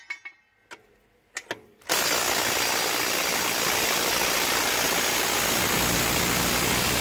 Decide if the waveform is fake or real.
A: real